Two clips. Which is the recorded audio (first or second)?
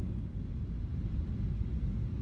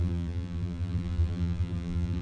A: first